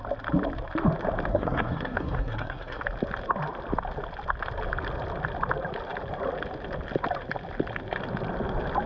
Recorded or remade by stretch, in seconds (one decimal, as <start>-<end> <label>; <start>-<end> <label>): 0.0-1.3 recorded; 1.3-2.8 remade; 2.8-8.9 recorded